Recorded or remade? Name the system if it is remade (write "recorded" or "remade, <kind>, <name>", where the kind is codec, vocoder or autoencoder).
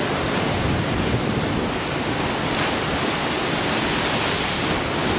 recorded